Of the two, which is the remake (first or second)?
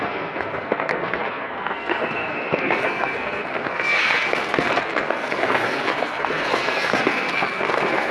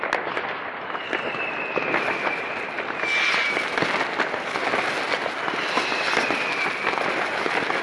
first